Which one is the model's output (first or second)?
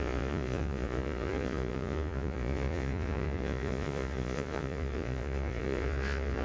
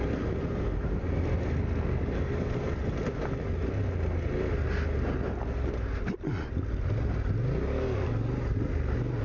first